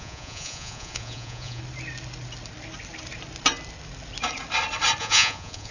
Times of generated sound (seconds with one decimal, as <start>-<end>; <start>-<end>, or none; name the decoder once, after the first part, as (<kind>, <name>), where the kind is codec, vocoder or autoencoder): 0.0-1.6 (vocoder, Vocos); 5.0-5.7